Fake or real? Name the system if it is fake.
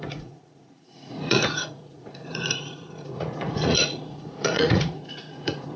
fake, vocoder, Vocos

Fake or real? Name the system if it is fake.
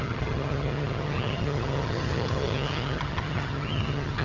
fake, vocoder, HiFi-GAN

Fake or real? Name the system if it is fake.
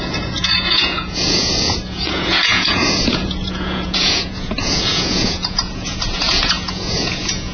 fake, vocoder, Vocos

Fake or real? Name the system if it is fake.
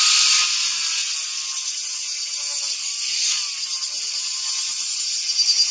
real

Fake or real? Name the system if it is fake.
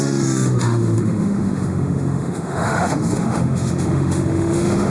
fake, autoencoder, DAC-VAE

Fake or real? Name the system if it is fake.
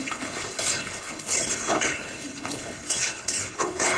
fake, codec, HILCodec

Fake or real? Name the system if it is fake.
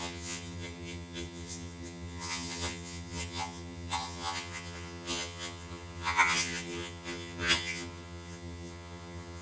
fake, vocoder, HiFi-GAN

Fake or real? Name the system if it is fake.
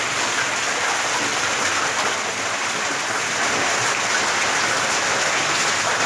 real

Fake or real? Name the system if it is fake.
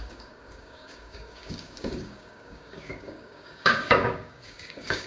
fake, codec, DAC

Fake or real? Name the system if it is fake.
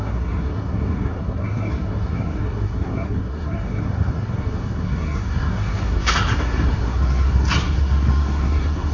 fake, codec, SNAC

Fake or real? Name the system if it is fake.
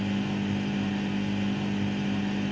real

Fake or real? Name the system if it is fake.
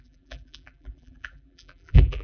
fake, vocoder, BigVGAN v2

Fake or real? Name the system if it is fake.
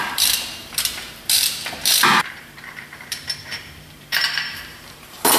fake, vocoder, BigVGAN v2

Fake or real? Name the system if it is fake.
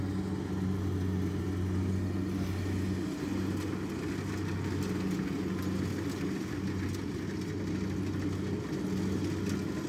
real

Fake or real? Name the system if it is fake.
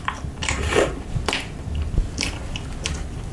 fake, vocoder, BigVGAN v2